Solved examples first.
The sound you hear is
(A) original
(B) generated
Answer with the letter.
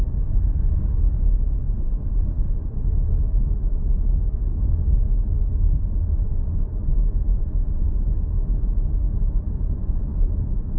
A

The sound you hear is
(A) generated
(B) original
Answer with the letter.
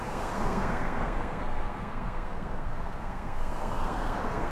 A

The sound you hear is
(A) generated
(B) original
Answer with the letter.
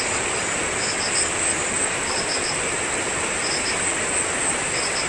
B